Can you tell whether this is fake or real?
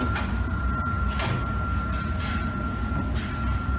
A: real